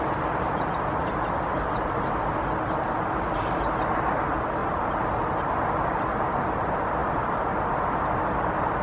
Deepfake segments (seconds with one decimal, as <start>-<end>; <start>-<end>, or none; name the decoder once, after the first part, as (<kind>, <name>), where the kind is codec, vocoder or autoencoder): none